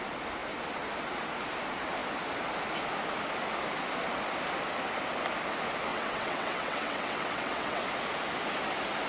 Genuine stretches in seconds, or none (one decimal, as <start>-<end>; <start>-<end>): 0.0-5.9; 7.8-9.1